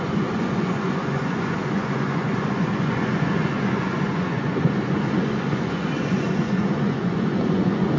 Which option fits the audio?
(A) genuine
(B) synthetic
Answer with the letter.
B